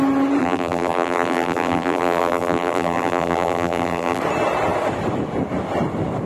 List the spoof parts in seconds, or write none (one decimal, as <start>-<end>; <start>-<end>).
0.4-4.2